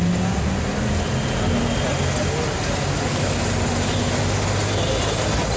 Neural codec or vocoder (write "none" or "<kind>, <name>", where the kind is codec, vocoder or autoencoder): none